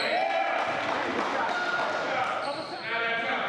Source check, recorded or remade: recorded